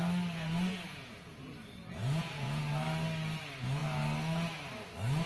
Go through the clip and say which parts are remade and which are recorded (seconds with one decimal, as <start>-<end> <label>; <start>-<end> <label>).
0.0-0.7 recorded; 0.7-1.3 remade; 1.3-2.0 recorded; 2.0-2.6 remade; 2.6-5.3 recorded